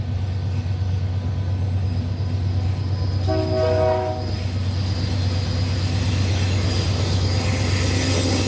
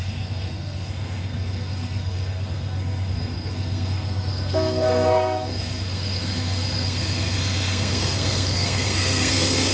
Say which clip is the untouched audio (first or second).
first